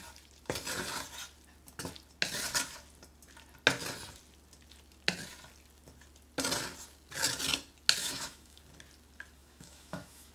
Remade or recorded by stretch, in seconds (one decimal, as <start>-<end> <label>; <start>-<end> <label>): 0.0-8.0 recorded; 8.0-8.6 remade; 8.6-9.4 recorded; 9.4-10.3 remade